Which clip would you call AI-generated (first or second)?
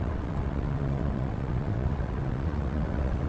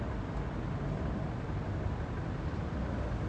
first